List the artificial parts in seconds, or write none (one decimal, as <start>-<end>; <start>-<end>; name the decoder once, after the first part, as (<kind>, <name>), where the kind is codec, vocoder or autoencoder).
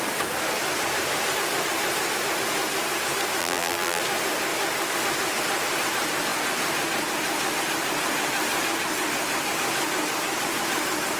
3.4-4.0 (vocoder, BigVGAN v2)